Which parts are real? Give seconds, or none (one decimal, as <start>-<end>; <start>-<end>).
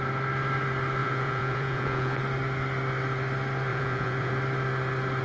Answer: 0.0-1.0; 2.2-3.7; 4.3-5.2